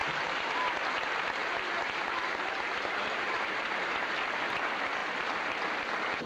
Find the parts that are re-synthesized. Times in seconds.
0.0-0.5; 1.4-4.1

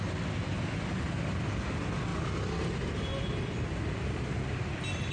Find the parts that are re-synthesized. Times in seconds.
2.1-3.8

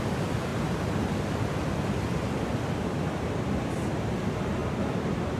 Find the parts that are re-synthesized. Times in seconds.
0.0-5.4

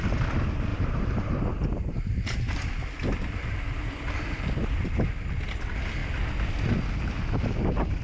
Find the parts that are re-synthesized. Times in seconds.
0.7-2.7

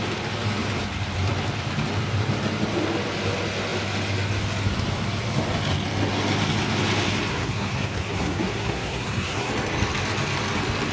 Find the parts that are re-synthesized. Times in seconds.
7.3-9.5

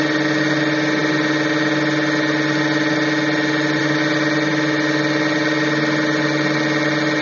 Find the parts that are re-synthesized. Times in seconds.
none

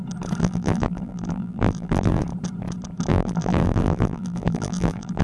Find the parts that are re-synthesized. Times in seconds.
0.4-2.2; 3.1-5.2

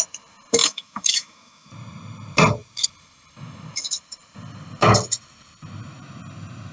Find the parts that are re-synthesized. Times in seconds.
0.6-1.7